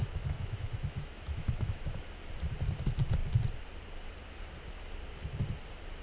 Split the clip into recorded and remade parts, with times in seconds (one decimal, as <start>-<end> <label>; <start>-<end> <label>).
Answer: 0.0-2.0 remade; 2.0-6.0 recorded